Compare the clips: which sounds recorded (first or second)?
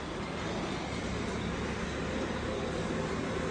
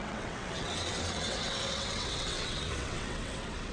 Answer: first